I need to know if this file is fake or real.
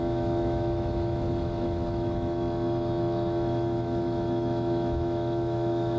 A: fake